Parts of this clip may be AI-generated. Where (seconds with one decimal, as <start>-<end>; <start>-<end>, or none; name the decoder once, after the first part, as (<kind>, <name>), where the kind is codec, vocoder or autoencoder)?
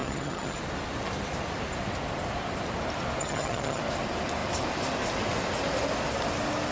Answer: 0.0-0.6 (vocoder, HiFi-GAN); 3.2-3.8